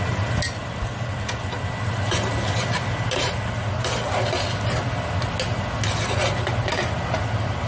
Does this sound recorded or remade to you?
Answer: recorded